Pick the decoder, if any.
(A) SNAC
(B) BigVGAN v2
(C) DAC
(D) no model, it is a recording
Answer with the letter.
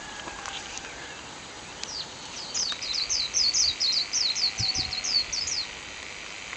D